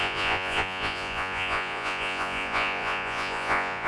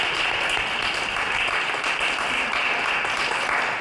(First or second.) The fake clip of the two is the first